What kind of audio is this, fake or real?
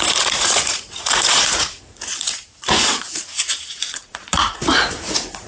fake